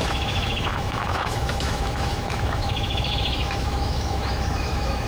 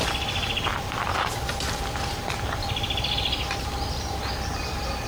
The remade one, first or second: first